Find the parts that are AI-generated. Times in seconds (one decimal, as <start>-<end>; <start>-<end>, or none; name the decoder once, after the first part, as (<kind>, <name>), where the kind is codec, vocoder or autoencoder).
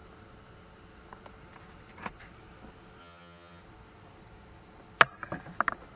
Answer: 3.0-3.6 (vocoder, HiFi-GAN)